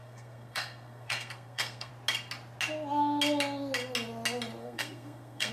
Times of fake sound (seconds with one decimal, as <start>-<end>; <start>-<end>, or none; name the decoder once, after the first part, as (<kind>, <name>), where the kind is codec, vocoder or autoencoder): 0.0-1.9 (codec, SNAC); 4.6-5.5